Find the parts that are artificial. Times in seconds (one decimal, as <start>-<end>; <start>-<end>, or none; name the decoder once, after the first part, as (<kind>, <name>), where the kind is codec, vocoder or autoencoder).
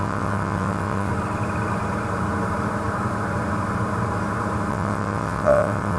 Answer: 0.0-1.1 (vocoder, WaveNeXt); 4.7-6.0